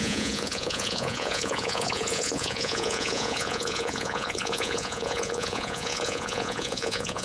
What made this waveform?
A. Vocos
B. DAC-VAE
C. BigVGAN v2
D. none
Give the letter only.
A